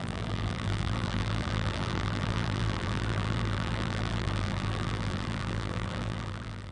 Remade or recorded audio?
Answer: remade